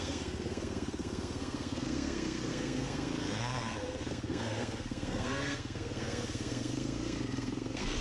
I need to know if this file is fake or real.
fake